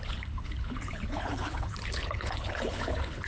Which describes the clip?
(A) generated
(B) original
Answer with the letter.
A